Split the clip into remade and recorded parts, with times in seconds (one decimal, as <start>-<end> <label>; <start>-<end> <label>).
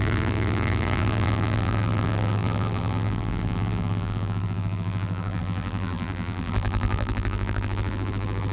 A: 0.0-8.5 remade